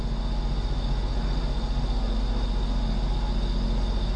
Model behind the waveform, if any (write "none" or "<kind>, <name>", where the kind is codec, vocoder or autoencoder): none